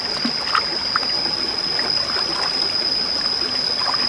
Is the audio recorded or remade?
recorded